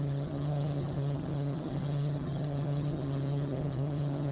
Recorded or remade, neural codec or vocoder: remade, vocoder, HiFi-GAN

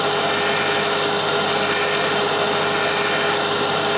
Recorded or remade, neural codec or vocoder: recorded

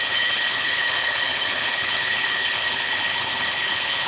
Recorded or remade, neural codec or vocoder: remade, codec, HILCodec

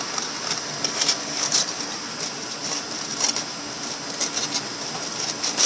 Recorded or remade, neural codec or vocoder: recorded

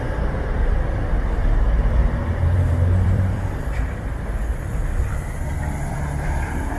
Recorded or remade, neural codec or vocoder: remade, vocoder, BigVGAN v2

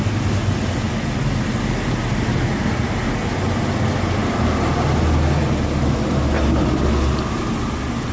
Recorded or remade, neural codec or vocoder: recorded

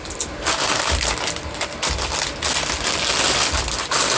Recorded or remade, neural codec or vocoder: recorded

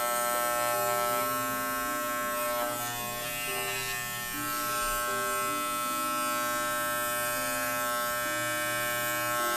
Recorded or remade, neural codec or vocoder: recorded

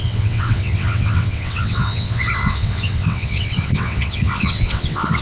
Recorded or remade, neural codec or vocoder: remade, vocoder, WaveNeXt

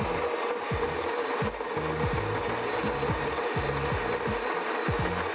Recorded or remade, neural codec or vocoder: recorded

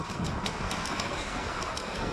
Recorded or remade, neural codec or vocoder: remade, codec, SNAC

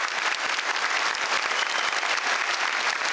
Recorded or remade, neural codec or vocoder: recorded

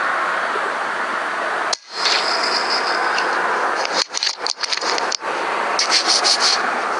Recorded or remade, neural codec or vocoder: recorded